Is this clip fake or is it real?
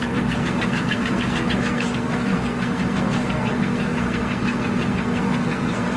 fake